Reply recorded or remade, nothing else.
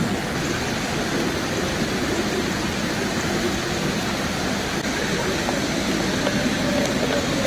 recorded